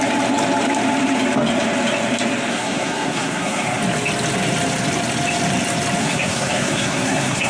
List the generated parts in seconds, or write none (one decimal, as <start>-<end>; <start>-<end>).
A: 2.5-3.8; 6.0-7.5